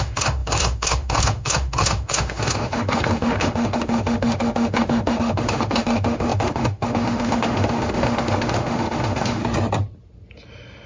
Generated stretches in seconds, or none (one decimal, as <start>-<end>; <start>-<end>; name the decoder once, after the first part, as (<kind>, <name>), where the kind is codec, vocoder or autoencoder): 0.0-9.4 (autoencoder, DAC-VAE)